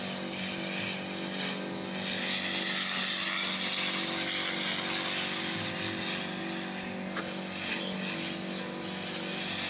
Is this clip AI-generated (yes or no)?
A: no